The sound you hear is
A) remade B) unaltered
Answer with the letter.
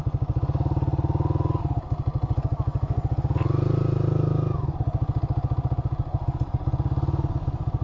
B